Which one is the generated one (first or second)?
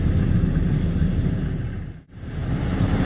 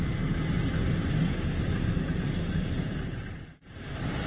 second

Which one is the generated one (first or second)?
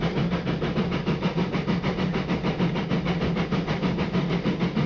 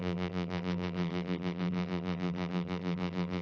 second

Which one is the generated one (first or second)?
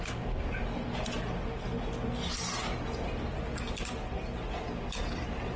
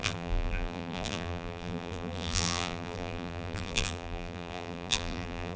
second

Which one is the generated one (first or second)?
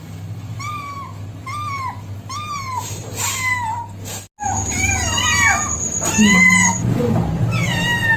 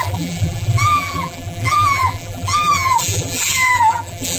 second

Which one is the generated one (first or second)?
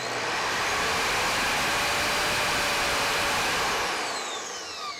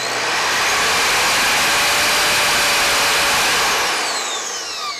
first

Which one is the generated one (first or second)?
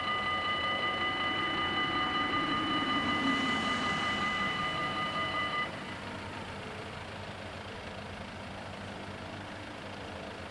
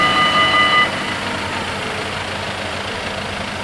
first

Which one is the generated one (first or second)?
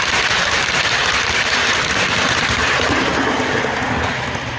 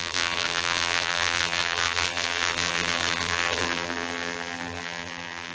second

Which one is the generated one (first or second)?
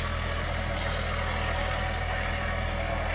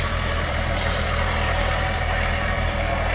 second